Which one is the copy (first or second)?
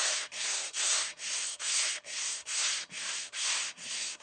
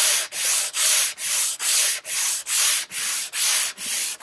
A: first